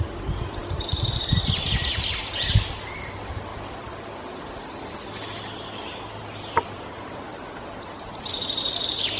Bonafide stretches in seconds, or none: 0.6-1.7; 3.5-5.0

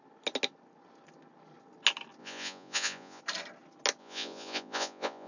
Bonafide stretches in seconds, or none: 0.0-2.2; 3.2-4.0

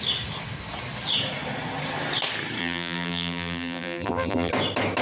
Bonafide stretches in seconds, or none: 0.0-2.6; 4.5-5.0

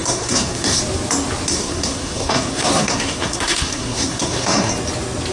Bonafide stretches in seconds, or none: 0.8-1.5; 4.7-5.3

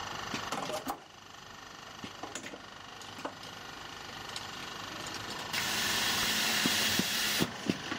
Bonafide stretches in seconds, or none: 2.3-3.9

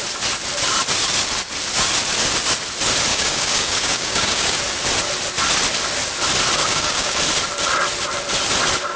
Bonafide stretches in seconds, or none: 0.0-3.1; 4.6-6.6; 7.2-9.0

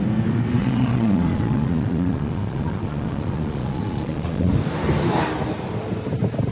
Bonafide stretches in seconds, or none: 0.0-0.6; 4.5-6.5